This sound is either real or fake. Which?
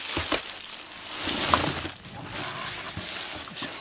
real